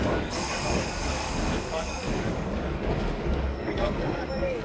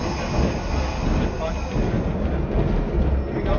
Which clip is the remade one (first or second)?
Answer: first